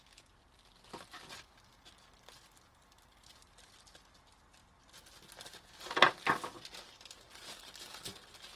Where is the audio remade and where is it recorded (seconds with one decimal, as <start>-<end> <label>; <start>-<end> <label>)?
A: 0.0-8.6 recorded